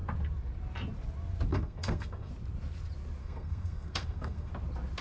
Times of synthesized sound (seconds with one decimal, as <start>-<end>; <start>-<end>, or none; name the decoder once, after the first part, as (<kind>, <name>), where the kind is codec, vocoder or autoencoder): 1.5-2.3 (codec, SNAC); 3.2-4.5